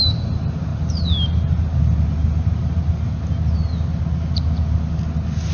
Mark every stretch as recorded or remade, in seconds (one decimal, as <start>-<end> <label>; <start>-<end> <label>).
0.0-5.5 recorded